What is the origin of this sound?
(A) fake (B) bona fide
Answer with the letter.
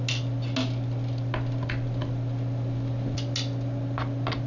B